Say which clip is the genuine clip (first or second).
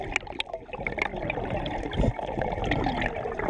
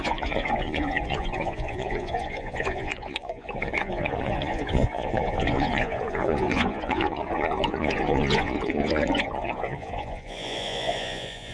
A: first